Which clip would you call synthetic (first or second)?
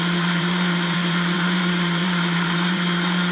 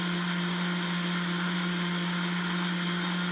first